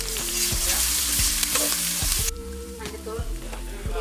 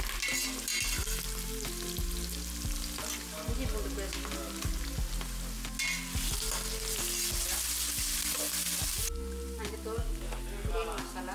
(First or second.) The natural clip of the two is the second